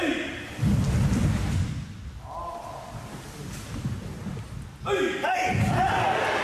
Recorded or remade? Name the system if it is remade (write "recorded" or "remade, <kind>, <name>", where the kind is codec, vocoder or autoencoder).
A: recorded